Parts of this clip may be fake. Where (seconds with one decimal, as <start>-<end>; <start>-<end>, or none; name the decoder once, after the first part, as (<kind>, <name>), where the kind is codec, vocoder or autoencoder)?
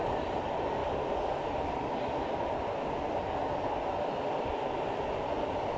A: none